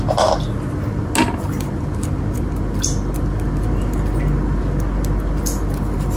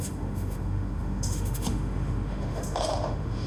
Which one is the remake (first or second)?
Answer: second